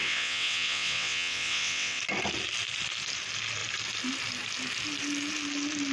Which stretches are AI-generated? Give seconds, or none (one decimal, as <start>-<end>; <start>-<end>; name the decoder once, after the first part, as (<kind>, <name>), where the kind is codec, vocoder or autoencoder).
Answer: 0.0-2.0 (vocoder, WaveNeXt)